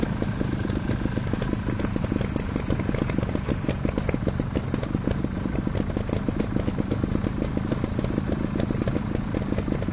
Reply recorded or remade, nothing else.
recorded